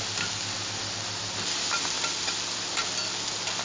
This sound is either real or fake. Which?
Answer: real